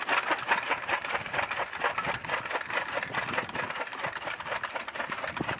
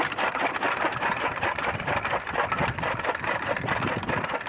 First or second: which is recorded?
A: first